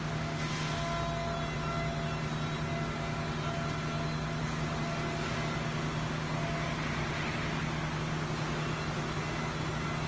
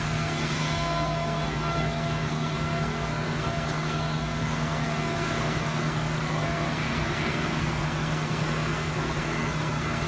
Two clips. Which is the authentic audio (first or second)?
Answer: first